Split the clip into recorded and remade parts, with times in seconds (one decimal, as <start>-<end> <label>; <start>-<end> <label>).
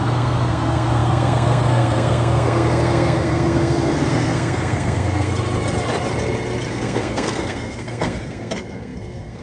0.0-5.3 remade; 5.3-6.7 recorded; 6.7-9.4 remade